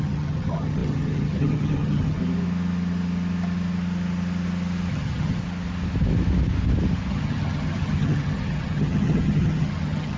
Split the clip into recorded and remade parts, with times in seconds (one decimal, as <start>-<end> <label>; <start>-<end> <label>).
0.0-2.2 remade; 2.2-4.9 recorded; 4.9-5.4 remade; 5.4-7.1 recorded; 7.1-10.2 remade